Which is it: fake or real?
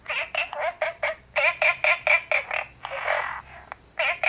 real